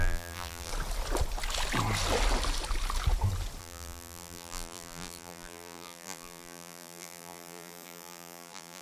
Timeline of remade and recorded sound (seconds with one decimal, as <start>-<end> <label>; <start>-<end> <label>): 0.0-0.7 remade; 0.7-3.6 recorded; 3.6-8.8 remade